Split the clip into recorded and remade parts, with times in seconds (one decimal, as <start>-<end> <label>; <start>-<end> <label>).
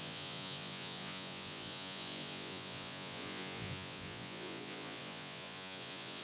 0.0-6.2 remade